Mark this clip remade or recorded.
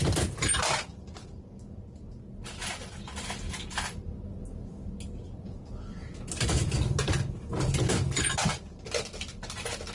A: recorded